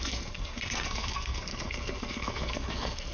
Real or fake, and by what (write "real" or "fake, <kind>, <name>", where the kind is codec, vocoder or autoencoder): fake, codec, SNAC